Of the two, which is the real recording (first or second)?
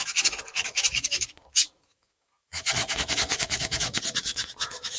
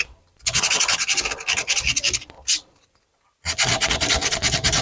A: second